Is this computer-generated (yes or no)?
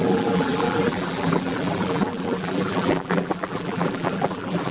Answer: yes